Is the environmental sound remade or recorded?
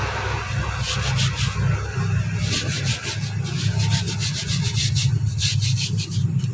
recorded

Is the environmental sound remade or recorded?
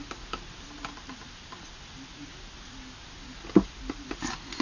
recorded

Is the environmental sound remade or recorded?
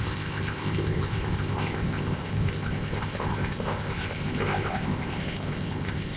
remade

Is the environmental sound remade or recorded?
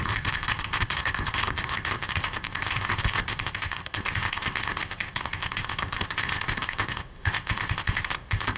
remade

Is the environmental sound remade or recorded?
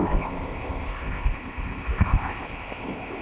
remade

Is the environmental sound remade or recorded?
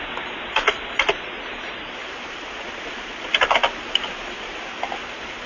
recorded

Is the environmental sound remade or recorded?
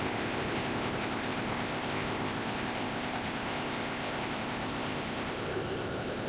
remade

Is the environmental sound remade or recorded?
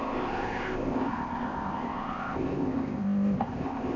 remade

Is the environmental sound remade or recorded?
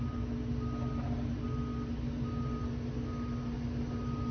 recorded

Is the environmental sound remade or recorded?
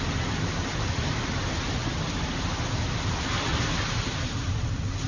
recorded